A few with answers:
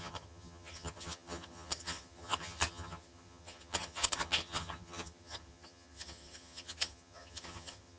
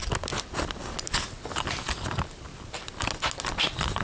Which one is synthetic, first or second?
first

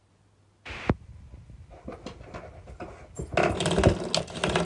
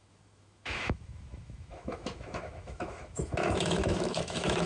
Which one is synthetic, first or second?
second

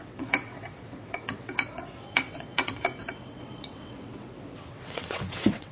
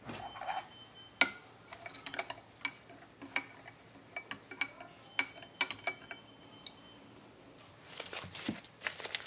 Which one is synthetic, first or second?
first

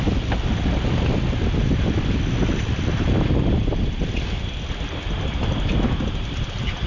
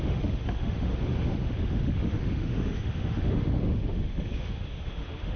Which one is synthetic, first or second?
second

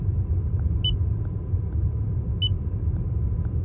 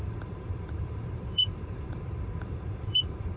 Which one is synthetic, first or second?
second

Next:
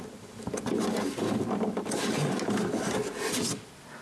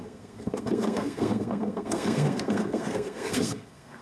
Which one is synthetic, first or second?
second